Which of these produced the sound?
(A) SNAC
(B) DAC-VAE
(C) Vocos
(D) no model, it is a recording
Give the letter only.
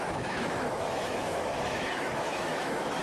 B